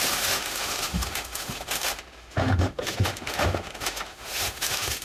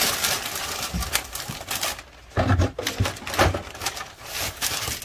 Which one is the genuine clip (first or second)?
second